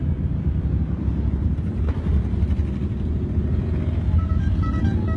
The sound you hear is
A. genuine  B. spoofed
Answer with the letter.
A